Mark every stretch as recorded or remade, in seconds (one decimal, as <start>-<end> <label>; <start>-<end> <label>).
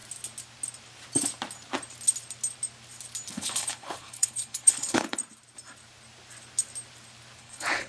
0.0-3.3 recorded; 3.3-5.2 remade; 5.2-7.4 recorded; 7.4-7.9 remade